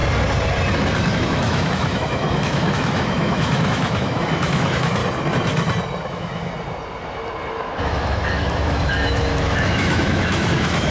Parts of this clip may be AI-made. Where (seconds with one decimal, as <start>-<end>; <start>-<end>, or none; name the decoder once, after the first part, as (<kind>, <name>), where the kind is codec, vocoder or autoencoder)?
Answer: 1.1-5.0 (autoencoder, DAC-VAE); 6.1-6.5; 7.5-10.9